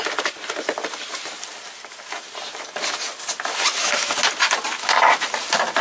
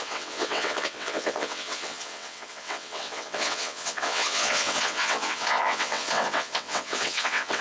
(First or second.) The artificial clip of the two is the second